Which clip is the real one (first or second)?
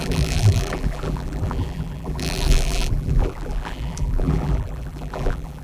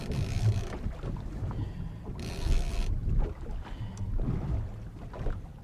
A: second